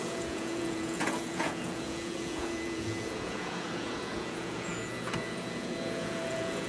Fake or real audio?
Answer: fake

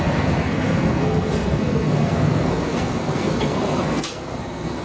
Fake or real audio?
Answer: fake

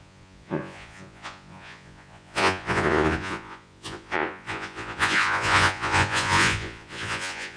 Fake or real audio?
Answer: fake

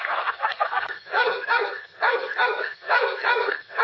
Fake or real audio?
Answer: fake